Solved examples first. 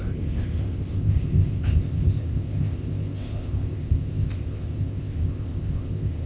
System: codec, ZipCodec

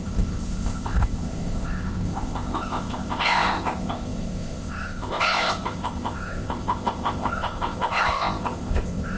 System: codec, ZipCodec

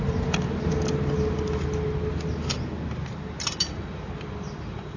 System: none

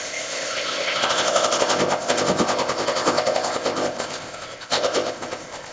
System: codec, ZipCodec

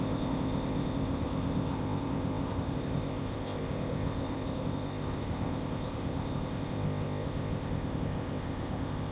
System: codec, ZipCodec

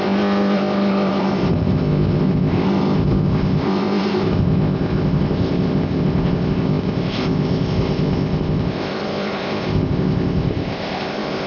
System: codec, ZipCodec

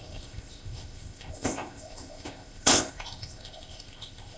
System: codec, ZipCodec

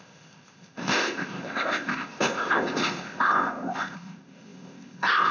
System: codec, ZipCodec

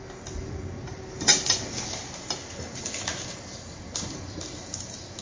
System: none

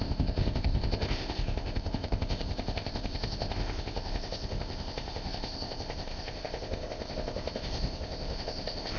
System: codec, ZipCodec